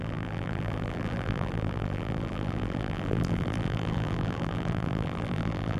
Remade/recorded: remade